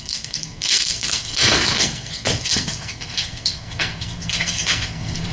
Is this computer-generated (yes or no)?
yes